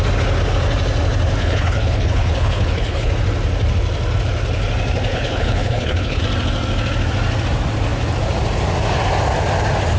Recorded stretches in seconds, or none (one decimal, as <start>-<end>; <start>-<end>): 0.0-1.4; 3.1-5.1; 6.2-10.0